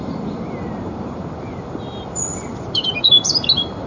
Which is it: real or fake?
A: fake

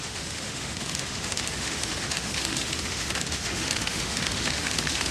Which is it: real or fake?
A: fake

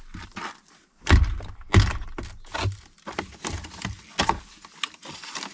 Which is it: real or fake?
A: real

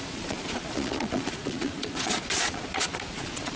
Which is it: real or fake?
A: fake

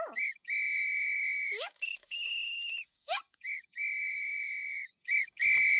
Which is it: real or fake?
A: fake